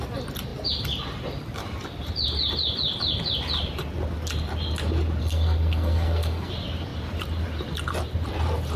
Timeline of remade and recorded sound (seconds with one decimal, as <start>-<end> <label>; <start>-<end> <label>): 0.0-5.2 recorded; 5.2-6.5 remade; 6.5-8.8 recorded